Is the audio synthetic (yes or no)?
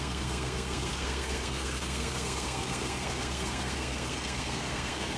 yes